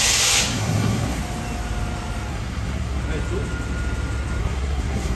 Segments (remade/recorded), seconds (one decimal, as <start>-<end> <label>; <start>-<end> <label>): 0.0-0.5 recorded; 0.5-1.2 remade; 1.2-2.3 recorded; 2.3-3.0 remade; 3.0-4.4 recorded; 4.4-5.2 remade